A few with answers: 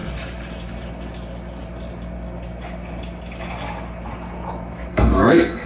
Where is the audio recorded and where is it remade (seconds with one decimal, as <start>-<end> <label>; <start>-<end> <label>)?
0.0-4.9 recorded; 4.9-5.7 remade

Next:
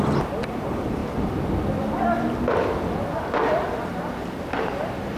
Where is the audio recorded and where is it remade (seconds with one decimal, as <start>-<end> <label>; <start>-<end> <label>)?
0.0-5.2 recorded

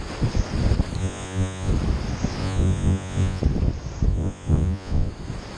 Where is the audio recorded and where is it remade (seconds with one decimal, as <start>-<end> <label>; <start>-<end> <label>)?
0.0-1.0 recorded; 1.0-1.7 remade; 1.7-2.4 recorded; 2.4-3.4 remade; 3.4-4.1 recorded; 4.1-5.1 remade; 5.1-5.6 recorded